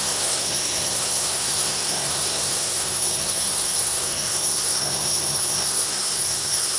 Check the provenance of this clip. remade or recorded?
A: remade